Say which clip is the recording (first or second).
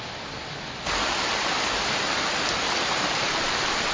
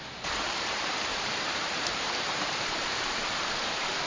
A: first